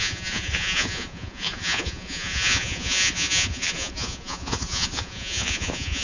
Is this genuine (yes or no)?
no